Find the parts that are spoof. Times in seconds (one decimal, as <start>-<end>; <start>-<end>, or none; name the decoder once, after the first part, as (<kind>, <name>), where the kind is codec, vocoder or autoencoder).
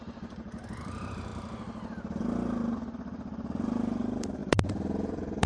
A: 0.0-1.3 (vocoder, BigVGAN v2); 4.0-5.5